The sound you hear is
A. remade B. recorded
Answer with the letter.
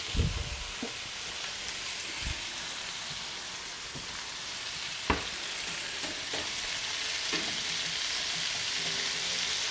B